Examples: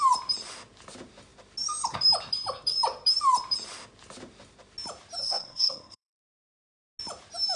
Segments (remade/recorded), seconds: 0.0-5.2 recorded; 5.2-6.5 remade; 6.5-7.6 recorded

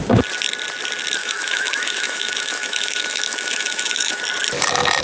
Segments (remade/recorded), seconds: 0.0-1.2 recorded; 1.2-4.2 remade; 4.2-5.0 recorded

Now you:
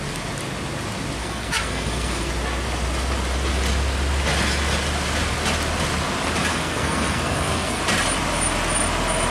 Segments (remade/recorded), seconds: 0.0-1.2 recorded; 1.2-2.3 remade; 2.3-6.5 recorded; 6.5-7.8 remade; 7.8-9.3 recorded

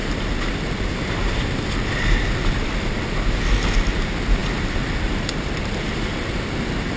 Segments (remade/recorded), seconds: 0.0-7.0 recorded